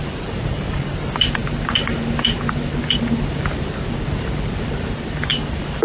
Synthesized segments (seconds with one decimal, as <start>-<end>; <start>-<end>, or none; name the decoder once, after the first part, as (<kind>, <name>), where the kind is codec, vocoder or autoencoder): 0.0-5.8 (vocoder, BigVGAN v2)